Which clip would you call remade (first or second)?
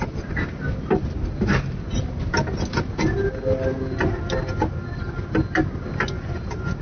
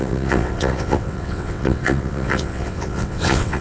second